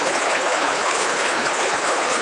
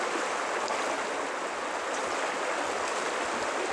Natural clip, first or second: second